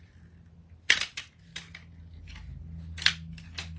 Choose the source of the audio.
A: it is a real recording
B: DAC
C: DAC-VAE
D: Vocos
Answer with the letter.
A